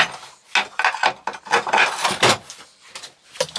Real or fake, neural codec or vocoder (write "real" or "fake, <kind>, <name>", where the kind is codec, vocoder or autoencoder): real